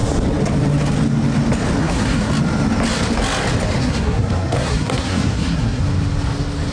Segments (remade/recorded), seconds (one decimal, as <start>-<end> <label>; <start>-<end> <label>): 0.0-1.8 recorded; 1.8-2.3 remade; 2.3-3.8 recorded; 3.8-5.8 remade; 5.8-6.7 recorded